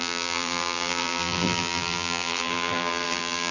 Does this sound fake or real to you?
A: fake